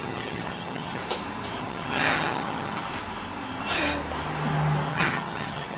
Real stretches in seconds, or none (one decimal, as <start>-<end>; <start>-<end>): 1.0-1.6; 2.9-4.9